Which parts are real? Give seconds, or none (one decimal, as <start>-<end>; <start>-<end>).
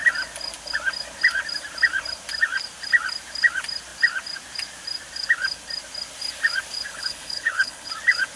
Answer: 0.0-6.9; 7.9-8.4